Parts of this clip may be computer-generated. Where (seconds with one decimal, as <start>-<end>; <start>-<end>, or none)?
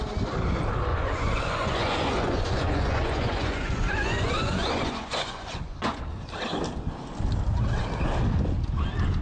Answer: 0.9-6.0